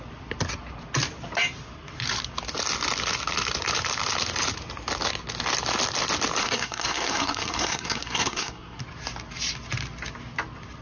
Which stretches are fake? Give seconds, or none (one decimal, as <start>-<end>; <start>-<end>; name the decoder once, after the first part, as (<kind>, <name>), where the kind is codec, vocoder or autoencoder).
6.4-8.8 (codec, SNAC)